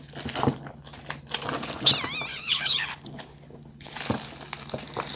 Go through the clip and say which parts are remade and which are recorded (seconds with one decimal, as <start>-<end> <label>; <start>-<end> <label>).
0.0-2.3 recorded; 2.3-4.0 remade; 4.0-5.2 recorded